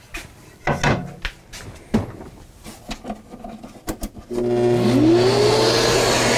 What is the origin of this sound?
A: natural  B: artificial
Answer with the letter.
A